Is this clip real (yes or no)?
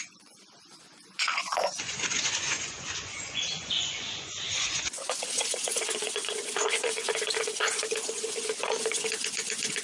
no